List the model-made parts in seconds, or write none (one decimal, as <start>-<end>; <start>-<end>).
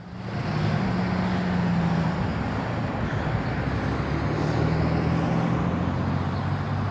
none